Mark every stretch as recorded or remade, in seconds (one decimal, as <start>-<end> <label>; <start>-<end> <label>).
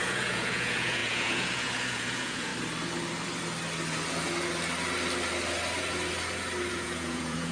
0.0-2.5 remade; 2.5-6.7 recorded; 6.7-7.5 remade